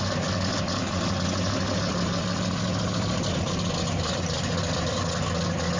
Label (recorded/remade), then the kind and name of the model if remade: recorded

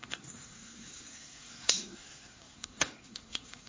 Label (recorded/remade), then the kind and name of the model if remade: remade, codec, SNAC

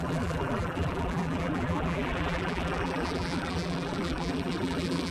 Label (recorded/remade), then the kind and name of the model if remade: remade, vocoder, BigVGAN v2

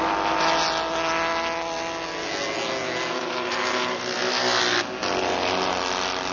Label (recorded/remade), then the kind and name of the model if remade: recorded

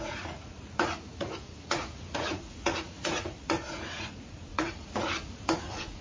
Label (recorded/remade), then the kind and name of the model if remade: remade, vocoder, Vocos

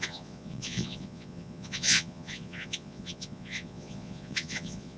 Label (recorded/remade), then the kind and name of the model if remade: remade, vocoder, Vocos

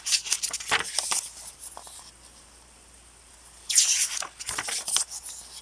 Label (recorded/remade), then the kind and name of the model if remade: recorded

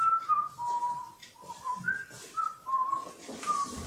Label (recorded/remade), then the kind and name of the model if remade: recorded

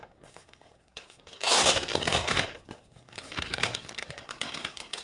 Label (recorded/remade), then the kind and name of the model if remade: remade, codec, SNAC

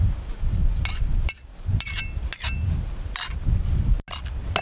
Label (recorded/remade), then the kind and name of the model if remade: recorded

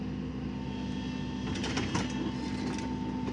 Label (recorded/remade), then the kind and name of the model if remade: recorded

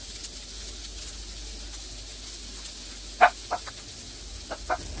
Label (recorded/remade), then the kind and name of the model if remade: recorded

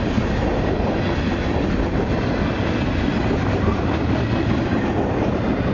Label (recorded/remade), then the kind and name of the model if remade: recorded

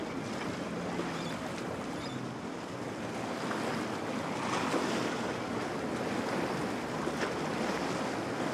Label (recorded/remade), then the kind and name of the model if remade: recorded